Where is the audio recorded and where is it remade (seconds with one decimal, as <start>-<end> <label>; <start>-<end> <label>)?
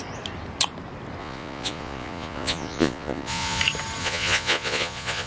0.0-1.2 recorded; 1.2-3.6 remade; 3.6-4.0 recorded; 4.0-5.3 remade